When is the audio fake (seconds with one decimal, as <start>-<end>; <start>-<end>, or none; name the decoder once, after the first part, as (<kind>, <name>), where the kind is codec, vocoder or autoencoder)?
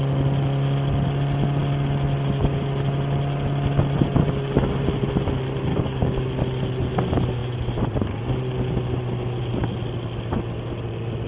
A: 5.7-6.2 (codec, DAC)